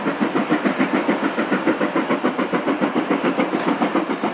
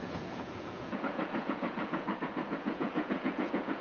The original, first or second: first